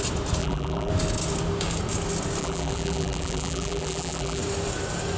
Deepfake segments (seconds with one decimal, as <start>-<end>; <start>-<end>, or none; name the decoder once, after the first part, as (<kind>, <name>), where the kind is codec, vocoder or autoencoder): 0.4-0.9 (vocoder, BigVGAN v2); 2.4-4.4